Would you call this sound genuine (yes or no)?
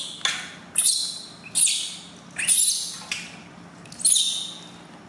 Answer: yes